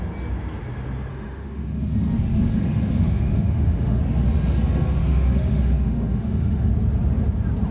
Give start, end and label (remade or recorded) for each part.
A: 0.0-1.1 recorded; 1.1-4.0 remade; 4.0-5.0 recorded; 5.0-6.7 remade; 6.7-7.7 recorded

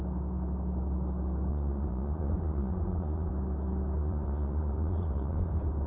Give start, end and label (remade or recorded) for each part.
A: 0.0-1.5 recorded; 1.5-3.3 remade; 3.3-4.0 recorded; 4.0-5.5 remade; 5.5-5.9 recorded

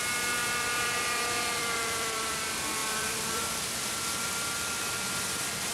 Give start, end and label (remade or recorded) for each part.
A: 0.0-0.4 recorded; 0.4-2.3 remade; 2.3-2.8 recorded; 2.8-3.7 remade; 3.7-5.7 recorded